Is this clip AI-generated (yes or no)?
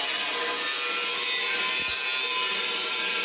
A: no